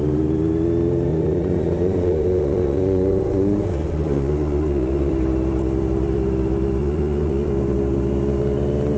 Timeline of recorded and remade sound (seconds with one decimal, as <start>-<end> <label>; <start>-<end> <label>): 0.0-1.1 recorded; 1.1-5.1 remade; 5.1-6.8 recorded; 6.8-7.5 remade; 7.5-9.0 recorded